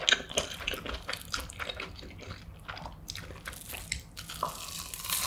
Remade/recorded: recorded